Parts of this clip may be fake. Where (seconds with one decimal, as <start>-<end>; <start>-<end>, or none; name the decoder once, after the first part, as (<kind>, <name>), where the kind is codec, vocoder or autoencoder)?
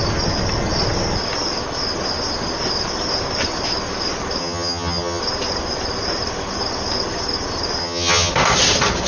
4.4-5.2 (vocoder, HiFi-GAN); 7.8-8.3